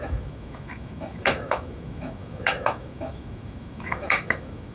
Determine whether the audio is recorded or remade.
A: remade